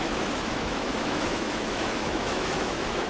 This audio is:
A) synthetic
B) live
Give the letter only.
A